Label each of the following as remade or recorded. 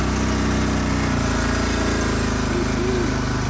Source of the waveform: recorded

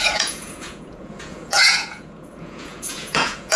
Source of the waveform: remade